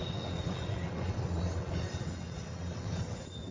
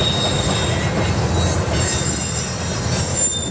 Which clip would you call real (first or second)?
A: second